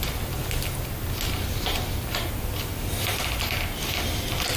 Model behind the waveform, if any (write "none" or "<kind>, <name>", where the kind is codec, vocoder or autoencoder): none